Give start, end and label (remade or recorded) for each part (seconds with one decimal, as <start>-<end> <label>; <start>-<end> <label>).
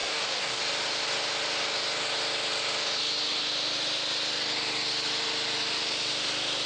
0.0-0.6 remade; 0.6-6.7 recorded